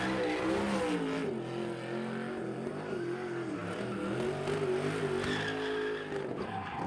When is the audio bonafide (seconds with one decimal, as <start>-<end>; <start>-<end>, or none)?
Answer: 0.0-6.9